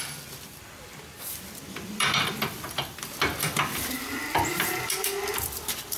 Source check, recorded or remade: remade